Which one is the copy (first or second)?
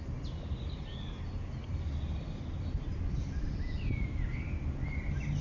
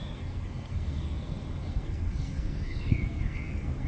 second